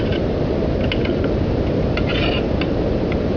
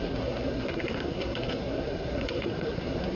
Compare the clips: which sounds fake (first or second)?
second